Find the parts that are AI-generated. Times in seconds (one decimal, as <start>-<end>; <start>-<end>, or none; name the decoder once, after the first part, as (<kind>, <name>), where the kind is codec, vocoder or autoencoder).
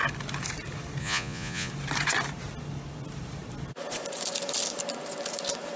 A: 1.0-1.7 (vocoder, Vocos)